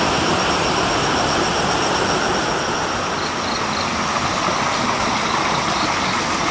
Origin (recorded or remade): recorded